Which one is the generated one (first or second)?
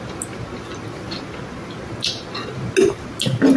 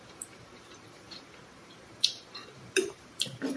second